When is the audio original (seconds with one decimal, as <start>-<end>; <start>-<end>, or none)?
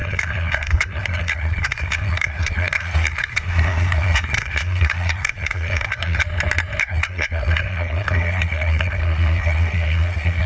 6.2-6.8